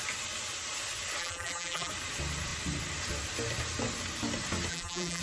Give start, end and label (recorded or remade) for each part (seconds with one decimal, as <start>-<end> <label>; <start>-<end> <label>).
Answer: 0.0-1.2 recorded; 1.2-1.9 remade; 1.9-4.7 recorded; 4.7-5.2 remade